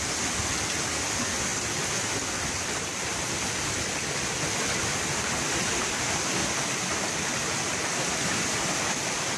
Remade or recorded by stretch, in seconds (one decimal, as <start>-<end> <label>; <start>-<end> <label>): 0.0-9.4 recorded